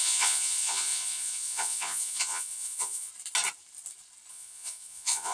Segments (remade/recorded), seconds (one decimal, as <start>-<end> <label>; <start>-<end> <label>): 0.0-3.1 remade; 3.1-4.3 recorded; 4.3-5.3 remade